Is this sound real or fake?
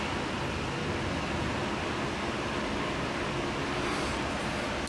real